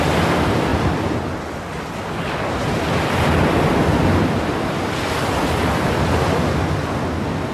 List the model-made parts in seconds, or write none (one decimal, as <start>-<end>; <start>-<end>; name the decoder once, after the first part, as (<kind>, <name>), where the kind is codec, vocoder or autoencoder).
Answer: none